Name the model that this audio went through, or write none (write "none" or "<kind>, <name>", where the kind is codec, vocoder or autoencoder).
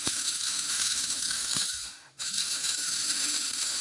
autoencoder, DAC-VAE